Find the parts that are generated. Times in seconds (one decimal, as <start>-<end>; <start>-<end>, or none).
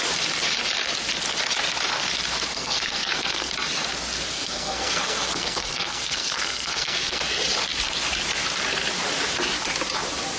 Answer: 2.5-3.5; 4.3-7.2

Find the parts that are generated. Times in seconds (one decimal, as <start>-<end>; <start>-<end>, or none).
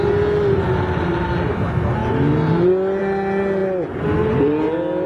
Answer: none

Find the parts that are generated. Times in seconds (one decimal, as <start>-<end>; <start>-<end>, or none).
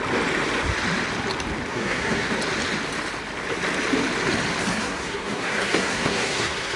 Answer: 1.7-2.3; 4.7-6.8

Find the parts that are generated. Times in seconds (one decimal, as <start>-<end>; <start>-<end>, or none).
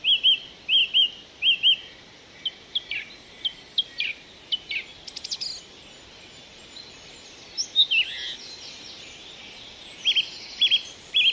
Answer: none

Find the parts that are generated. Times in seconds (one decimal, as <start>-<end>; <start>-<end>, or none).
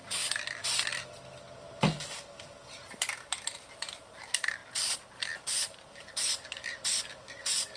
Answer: none